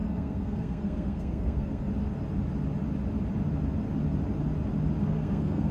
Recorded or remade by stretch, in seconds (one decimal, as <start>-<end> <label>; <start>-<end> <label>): 0.0-1.9 remade; 1.9-5.0 recorded; 5.0-5.7 remade